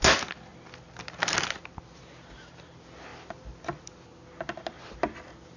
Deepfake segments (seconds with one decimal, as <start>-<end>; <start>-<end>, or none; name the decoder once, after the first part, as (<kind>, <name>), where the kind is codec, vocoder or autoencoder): none